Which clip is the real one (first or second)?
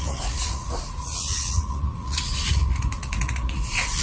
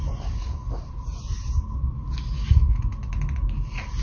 second